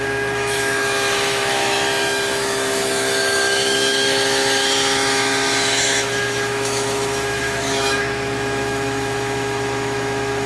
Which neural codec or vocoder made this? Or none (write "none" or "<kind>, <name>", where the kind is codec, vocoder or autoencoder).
autoencoder, DAC-VAE